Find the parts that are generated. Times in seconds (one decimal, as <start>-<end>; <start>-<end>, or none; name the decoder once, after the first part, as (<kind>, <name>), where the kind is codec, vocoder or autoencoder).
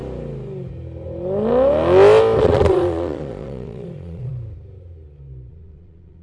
2.4-4.3 (vocoder, Vocos); 5.5-6.2